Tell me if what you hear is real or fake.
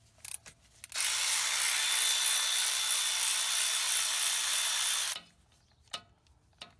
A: real